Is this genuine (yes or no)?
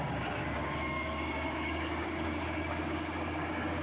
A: no